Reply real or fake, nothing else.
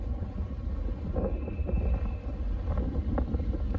real